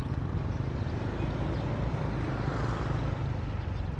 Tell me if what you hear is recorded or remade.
recorded